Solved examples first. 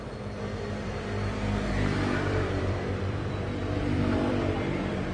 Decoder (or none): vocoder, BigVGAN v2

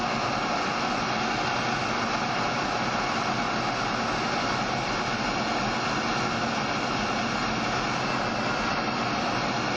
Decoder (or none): none